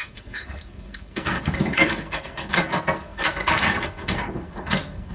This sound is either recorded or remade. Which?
remade